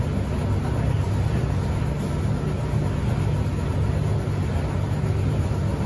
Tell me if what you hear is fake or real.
real